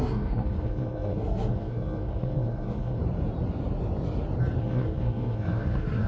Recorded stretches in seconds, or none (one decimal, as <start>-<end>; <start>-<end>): 3.0-4.6